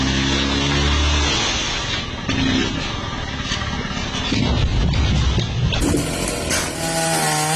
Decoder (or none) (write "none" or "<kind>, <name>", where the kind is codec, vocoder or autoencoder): none